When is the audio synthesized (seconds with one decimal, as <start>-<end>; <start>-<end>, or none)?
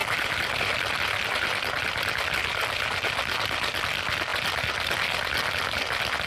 0.0-3.8